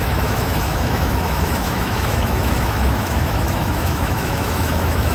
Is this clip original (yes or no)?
no